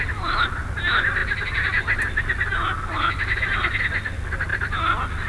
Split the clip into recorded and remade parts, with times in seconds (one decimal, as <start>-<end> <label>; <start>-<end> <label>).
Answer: 0.0-5.3 recorded